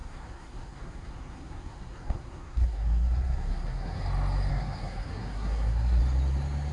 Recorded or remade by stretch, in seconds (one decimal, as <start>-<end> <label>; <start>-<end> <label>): 0.0-4.0 remade; 4.0-4.5 recorded; 4.5-6.0 remade; 6.0-6.7 recorded